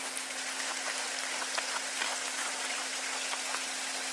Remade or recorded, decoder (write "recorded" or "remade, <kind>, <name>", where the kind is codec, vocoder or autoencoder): recorded